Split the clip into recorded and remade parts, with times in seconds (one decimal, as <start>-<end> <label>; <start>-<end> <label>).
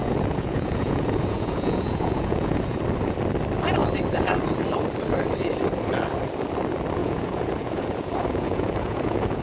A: 0.0-2.8 remade; 2.8-7.0 recorded; 7.0-9.4 remade